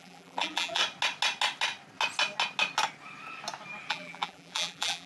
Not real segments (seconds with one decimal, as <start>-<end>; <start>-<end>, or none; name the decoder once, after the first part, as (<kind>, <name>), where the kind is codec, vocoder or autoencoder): 0.0-0.8 (vocoder, BigVGAN v2); 3.9-5.1